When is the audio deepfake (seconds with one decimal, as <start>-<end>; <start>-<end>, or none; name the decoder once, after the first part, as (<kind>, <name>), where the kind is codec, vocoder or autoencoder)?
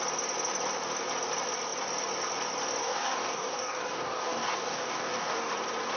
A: 2.8-5.5 (codec, DAC)